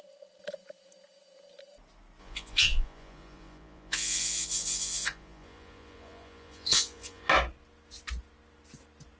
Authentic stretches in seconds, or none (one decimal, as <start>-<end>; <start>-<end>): 0.0-2.2; 7.3-9.2